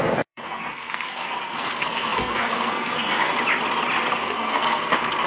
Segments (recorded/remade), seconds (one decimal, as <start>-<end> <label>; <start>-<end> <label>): 0.0-3.3 remade; 3.3-4.2 recorded; 4.2-5.3 remade